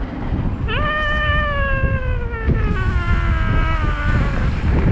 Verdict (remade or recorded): recorded